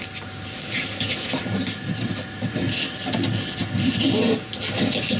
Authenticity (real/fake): real